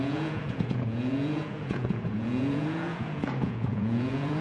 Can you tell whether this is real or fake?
fake